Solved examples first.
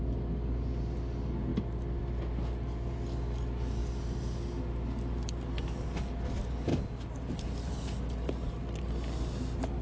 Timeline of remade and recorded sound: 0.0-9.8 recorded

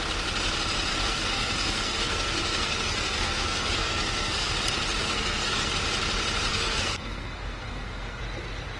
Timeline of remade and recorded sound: 0.0-0.9 recorded; 0.9-4.5 remade; 4.5-5.0 recorded; 5.0-5.7 remade; 5.7-6.5 recorded; 6.5-8.2 remade; 8.2-8.8 recorded

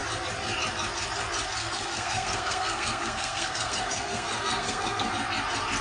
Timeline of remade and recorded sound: 0.0-1.6 recorded; 1.6-5.1 remade; 5.1-5.8 recorded

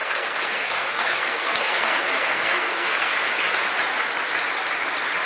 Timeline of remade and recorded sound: 0.0-3.2 remade; 3.2-5.3 recorded

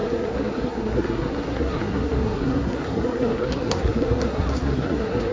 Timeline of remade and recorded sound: 0.0-5.3 remade

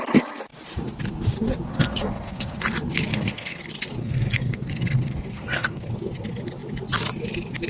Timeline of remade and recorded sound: 0.0-1.7 recorded; 1.7-2.6 remade; 2.6-3.1 recorded; 3.1-3.6 remade; 3.6-4.0 recorded; 4.0-5.9 remade; 5.9-7.7 recorded

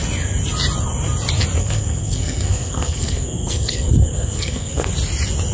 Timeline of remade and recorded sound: 0.0-1.6 recorded; 1.6-4.9 remade; 4.9-5.5 recorded

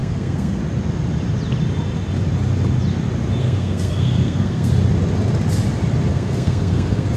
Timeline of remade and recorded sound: 0.0-0.6 remade; 0.6-3.4 recorded; 3.4-4.7 remade; 4.7-6.1 recorded; 6.1-7.2 remade